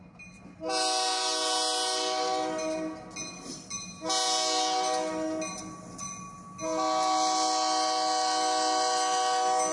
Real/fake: real